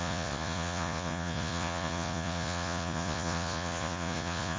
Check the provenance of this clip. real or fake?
fake